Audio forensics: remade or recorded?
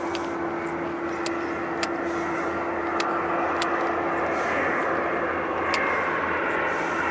recorded